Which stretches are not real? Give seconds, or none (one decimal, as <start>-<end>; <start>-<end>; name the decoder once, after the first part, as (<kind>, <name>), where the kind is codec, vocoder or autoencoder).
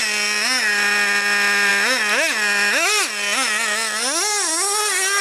none